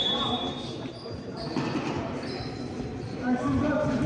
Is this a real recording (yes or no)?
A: no